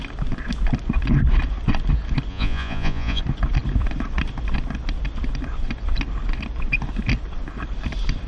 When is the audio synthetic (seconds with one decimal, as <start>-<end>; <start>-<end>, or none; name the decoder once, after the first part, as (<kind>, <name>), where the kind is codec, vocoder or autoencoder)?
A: 2.3-3.2 (vocoder, Vocos)